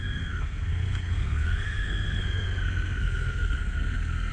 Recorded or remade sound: remade